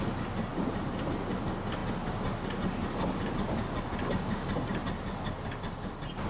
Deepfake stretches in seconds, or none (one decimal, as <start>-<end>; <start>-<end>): none